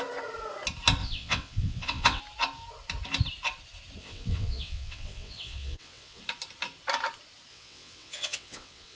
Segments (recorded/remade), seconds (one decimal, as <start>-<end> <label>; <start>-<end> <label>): 0.0-1.0 recorded; 1.0-2.2 remade; 2.2-4.0 recorded; 4.0-6.2 remade; 6.2-7.5 recorded; 7.5-9.0 remade